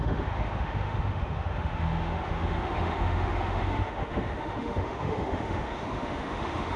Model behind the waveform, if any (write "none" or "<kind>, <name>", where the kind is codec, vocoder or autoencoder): autoencoder, DAC-VAE